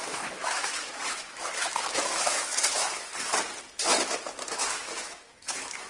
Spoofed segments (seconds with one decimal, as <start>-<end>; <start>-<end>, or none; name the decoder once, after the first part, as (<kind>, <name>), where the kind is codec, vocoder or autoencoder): 0.0-3.1 (autoencoder, DAC-VAE); 4.5-5.9